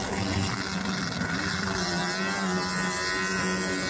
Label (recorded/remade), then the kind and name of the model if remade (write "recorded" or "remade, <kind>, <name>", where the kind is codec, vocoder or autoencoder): recorded